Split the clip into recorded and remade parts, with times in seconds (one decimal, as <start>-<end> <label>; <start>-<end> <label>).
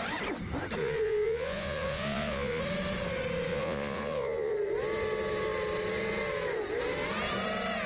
0.0-0.8 recorded; 0.8-2.6 remade; 2.6-3.5 recorded; 3.5-4.5 remade; 4.5-7.9 recorded